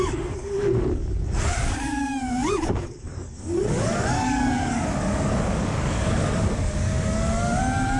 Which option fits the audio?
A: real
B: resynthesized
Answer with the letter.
B